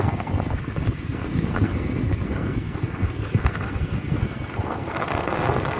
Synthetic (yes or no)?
yes